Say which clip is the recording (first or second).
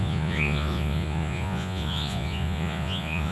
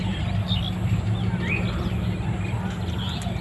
second